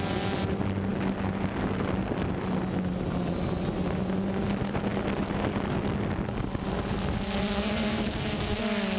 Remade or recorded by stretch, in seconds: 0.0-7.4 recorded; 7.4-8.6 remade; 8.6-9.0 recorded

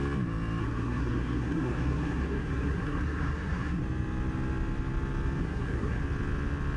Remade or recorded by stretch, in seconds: 0.0-0.6 recorded; 0.6-3.8 remade; 3.8-5.4 recorded; 5.4-6.0 remade; 6.0-6.8 recorded

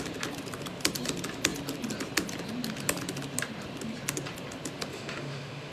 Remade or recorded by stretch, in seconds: 0.0-4.9 recorded; 4.9-5.7 remade

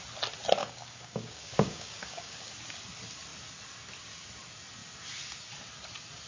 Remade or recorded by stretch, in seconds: 0.0-0.6 recorded; 0.6-2.5 remade; 2.5-6.3 recorded

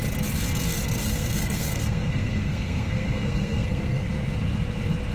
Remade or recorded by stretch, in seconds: 0.0-1.0 recorded; 1.0-4.1 remade; 4.1-5.1 recorded